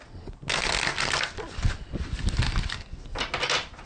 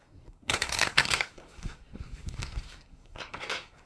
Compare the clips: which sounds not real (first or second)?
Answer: second